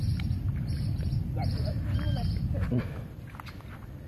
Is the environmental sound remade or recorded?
recorded